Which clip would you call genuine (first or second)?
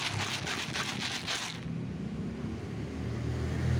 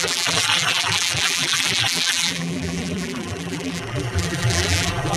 first